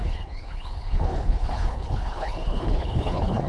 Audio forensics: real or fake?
fake